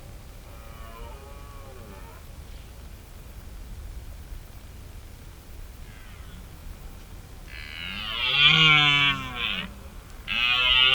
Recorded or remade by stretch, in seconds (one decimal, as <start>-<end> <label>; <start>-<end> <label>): 0.0-10.9 recorded